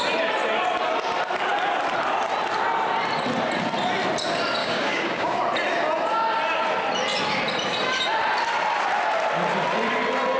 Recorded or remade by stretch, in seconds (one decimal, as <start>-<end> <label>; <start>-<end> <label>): 0.0-4.6 recorded; 4.6-5.4 remade; 5.4-10.4 recorded